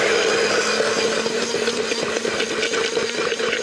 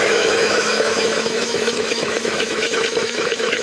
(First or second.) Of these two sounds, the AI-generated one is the second